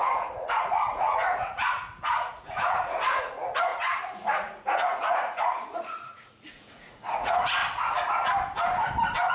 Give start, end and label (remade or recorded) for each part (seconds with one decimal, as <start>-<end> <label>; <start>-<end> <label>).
0.0-7.6 remade; 7.6-9.3 recorded